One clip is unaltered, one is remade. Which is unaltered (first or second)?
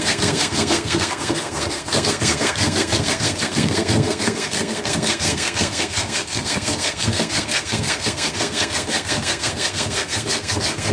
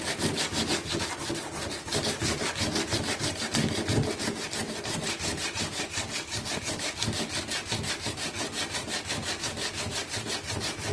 second